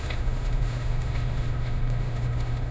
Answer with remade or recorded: remade